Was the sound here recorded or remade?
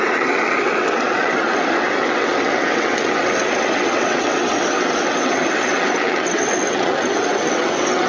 remade